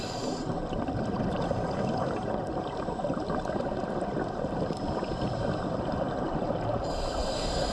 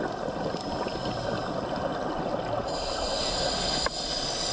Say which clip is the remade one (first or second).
first